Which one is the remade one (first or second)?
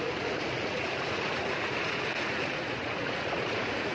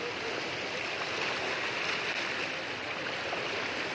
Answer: first